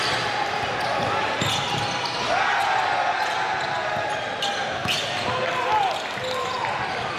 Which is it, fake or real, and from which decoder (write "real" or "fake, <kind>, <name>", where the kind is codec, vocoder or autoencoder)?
real